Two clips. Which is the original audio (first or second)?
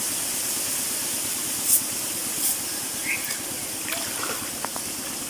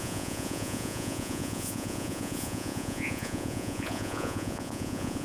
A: first